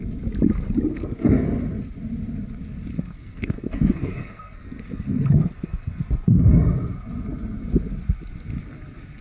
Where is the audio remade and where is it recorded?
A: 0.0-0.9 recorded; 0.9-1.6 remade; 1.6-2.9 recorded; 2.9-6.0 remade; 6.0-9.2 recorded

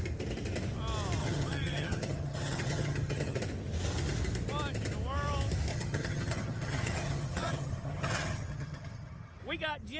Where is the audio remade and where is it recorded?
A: 0.0-1.2 recorded; 1.2-3.4 remade; 3.4-5.7 recorded; 5.7-9.4 remade; 9.4-10.0 recorded

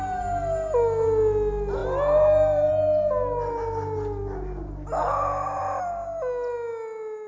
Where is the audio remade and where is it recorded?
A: 0.0-7.3 recorded

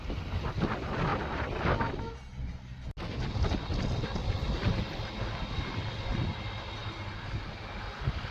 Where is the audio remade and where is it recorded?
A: 0.0-8.3 recorded

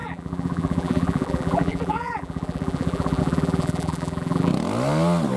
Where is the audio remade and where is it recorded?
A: 0.0-4.5 remade; 4.5-5.4 recorded